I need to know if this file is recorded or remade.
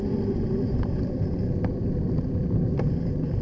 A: recorded